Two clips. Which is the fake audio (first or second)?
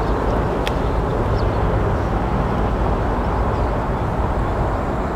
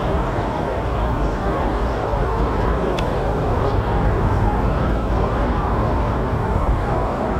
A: second